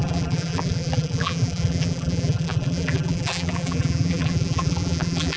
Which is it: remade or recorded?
remade